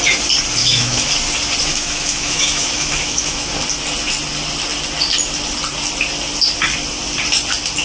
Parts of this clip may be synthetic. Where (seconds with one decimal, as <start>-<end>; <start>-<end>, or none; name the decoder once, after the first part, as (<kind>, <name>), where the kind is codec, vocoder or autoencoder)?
0.6-1.1 (autoencoder, DAC-VAE); 1.7-3.5